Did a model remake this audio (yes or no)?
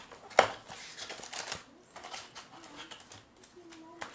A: no